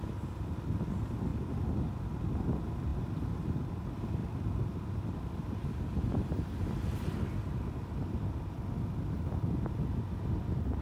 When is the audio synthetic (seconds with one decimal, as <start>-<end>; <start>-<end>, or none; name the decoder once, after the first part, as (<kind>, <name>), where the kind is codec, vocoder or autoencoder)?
1.3-2.2 (vocoder, BigVGAN v2); 4.2-6.6